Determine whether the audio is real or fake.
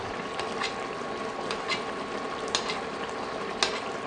real